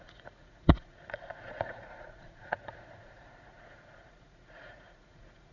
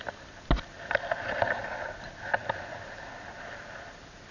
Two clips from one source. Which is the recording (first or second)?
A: second